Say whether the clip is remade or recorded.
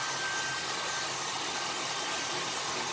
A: recorded